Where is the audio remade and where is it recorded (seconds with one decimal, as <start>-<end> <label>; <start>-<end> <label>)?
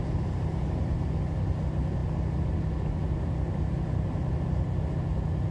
0.0-5.5 recorded